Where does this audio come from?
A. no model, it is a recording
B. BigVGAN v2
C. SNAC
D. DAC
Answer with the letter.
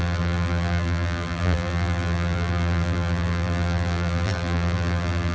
B